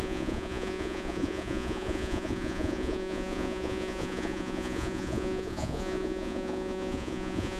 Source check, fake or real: fake